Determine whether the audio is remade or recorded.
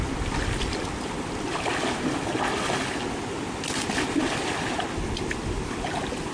recorded